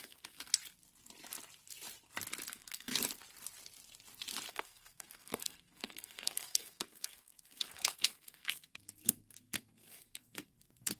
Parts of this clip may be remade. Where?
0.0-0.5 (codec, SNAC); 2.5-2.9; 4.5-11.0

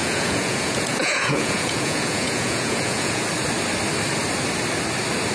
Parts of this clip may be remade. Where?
0.0-3.2 (vocoder, Vocos)

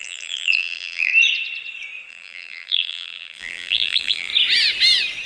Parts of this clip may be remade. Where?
0.0-1.1 (vocoder, BigVGAN v2); 2.1-4.3

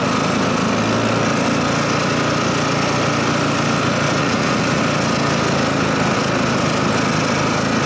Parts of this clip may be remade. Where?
4.2-4.8 (vocoder, Vocos)

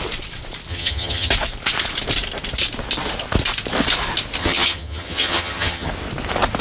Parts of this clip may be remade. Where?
0.7-1.3 (vocoder, HiFi-GAN); 4.4-5.9